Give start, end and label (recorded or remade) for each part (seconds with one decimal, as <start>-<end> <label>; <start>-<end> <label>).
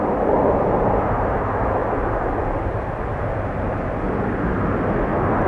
0.0-5.5 recorded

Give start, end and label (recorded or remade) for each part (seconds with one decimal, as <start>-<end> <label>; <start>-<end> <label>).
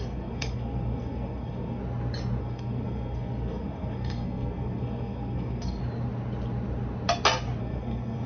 0.0-1.8 remade; 1.8-2.4 recorded; 2.4-5.8 remade; 5.8-7.6 recorded; 7.6-8.3 remade